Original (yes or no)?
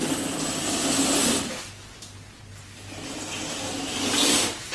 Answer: yes